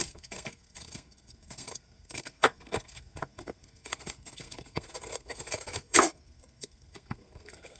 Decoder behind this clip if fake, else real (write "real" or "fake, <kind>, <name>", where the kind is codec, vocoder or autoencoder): fake, codec, SNAC